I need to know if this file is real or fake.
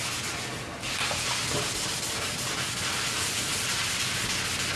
real